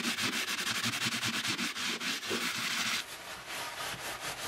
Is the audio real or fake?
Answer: real